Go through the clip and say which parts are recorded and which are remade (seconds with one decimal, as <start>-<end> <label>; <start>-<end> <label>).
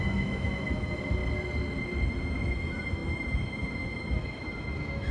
0.0-1.2 remade; 1.2-2.1 recorded; 2.1-5.1 remade